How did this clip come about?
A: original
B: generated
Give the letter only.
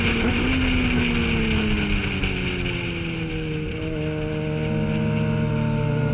A